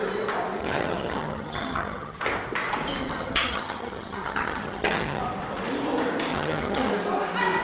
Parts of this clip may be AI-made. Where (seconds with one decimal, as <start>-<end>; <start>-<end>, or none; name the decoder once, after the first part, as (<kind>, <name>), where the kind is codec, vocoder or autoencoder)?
0.6-2.2 (vocoder, HiFi-GAN); 3.0-5.2; 6.3-6.9